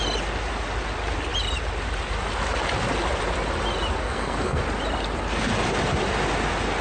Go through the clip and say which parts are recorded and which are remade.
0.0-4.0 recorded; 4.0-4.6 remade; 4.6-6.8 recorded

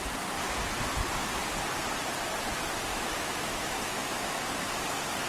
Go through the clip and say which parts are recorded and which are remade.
0.0-2.9 recorded; 2.9-4.3 remade; 4.3-5.3 recorded

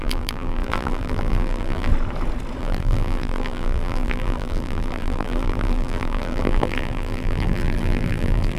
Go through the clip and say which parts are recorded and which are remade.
0.0-1.9 remade; 1.9-2.6 recorded; 2.6-8.6 remade